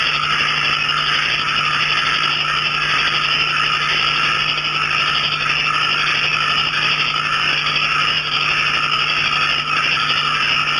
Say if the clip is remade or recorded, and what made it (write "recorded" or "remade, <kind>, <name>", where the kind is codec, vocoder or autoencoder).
recorded